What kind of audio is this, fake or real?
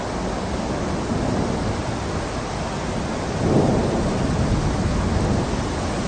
real